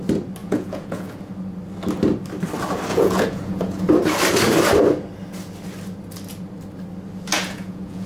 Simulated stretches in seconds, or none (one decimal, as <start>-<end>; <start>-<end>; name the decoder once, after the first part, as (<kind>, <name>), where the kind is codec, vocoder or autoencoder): 0.4-1.3 (vocoder, Vocos); 2.9-3.9; 7.3-8.1